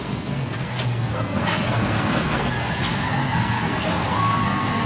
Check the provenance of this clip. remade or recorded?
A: remade